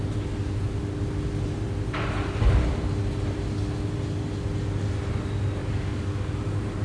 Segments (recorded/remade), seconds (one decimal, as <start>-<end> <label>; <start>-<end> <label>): 0.0-5.6 recorded; 5.6-6.3 remade; 6.3-6.8 recorded